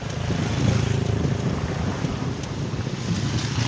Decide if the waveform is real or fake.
real